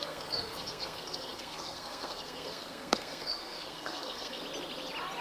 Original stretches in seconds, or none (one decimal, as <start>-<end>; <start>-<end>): 4.4-5.2